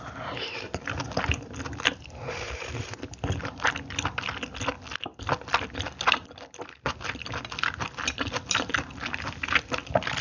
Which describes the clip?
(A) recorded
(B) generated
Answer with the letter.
A